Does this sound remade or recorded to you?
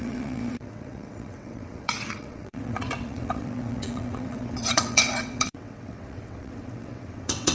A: remade